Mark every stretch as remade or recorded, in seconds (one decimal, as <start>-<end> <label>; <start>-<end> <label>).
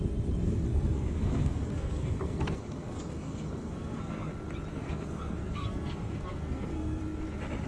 0.0-0.7 recorded; 0.7-4.3 remade; 4.3-4.7 recorded; 4.7-7.0 remade; 7.0-7.7 recorded